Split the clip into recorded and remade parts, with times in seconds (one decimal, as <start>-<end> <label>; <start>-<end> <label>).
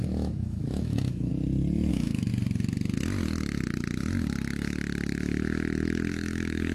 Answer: 0.0-1.3 remade; 1.3-1.9 recorded; 1.9-2.3 remade; 2.3-6.1 recorded; 6.1-6.7 remade